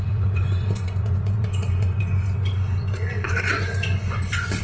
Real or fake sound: fake